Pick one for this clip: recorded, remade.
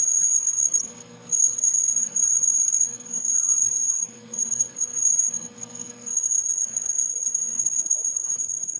remade